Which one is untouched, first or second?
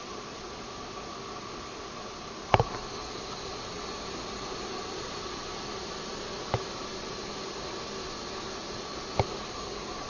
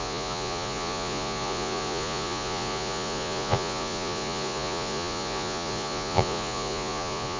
first